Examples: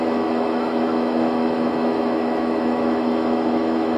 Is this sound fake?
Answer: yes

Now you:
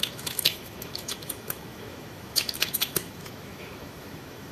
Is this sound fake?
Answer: yes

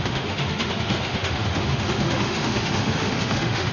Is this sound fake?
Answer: yes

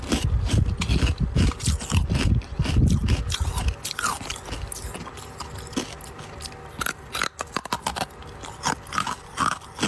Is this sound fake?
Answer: no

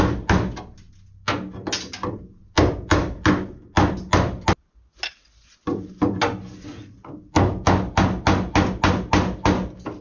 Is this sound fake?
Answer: no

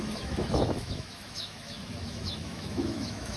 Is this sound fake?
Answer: yes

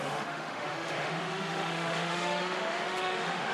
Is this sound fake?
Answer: yes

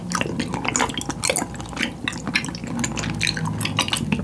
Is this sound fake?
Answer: no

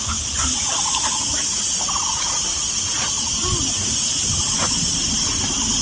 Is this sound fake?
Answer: no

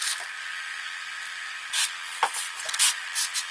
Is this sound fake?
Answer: no